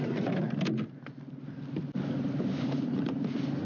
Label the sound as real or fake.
real